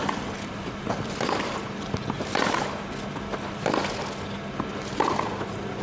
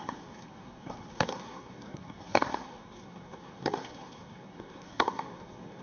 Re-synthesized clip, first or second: second